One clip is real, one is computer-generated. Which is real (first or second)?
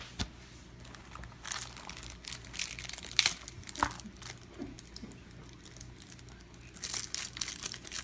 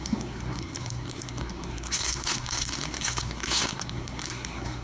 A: first